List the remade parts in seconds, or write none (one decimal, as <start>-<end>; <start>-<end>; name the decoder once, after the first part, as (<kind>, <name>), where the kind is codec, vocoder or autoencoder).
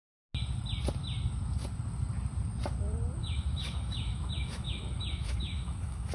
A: 3.2-6.1 (autoencoder, DAC-VAE)